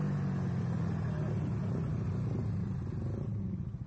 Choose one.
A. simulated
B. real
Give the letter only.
B